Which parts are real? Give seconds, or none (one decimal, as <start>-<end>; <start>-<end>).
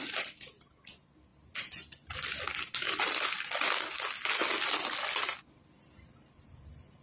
0.0-7.0